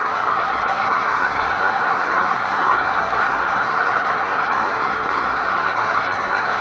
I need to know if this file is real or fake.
fake